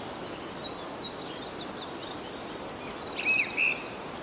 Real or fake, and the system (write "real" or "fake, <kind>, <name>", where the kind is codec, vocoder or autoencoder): real